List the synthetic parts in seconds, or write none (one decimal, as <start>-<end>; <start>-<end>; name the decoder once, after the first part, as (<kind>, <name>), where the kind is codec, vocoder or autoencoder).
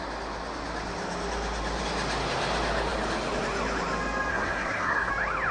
4.3-5.1 (codec, SNAC)